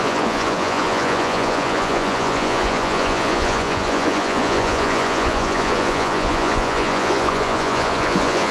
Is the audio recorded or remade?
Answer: remade